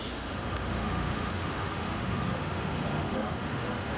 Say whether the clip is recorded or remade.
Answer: remade